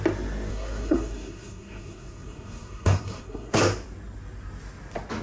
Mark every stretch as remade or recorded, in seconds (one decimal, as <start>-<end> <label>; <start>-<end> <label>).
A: 0.0-0.5 recorded; 0.5-3.6 remade; 3.6-5.2 recorded